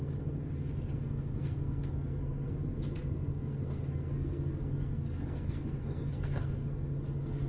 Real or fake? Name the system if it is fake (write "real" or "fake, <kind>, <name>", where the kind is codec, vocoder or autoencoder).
fake, codec, SNAC